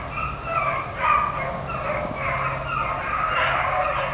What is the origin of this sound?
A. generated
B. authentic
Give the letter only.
B